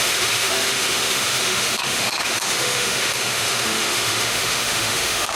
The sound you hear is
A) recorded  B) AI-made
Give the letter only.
B